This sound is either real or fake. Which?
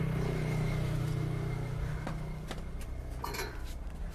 real